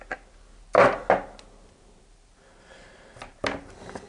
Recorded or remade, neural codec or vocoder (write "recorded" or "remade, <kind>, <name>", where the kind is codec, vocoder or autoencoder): recorded